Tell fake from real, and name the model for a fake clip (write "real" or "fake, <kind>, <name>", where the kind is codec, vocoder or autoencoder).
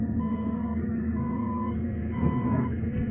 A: fake, codec, SNAC